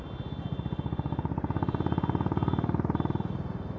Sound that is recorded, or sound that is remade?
recorded